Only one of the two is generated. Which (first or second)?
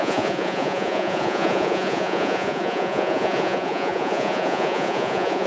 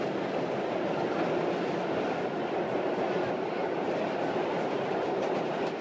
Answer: first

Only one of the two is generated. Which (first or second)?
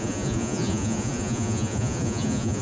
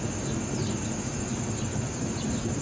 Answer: first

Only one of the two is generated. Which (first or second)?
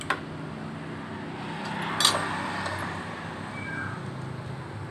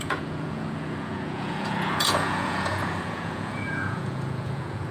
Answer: second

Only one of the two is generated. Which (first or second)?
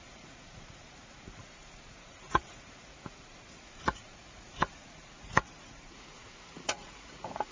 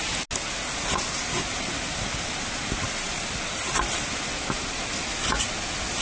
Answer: first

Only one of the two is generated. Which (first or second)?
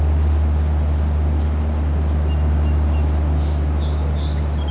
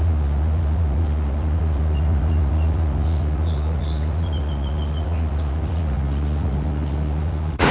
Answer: second